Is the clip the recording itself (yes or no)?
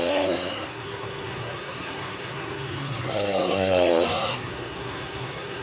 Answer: no